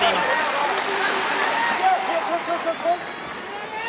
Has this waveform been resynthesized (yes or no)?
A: no